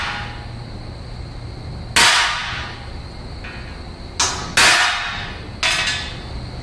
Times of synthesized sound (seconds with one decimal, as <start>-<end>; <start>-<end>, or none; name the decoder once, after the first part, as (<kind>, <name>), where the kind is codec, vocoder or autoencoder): none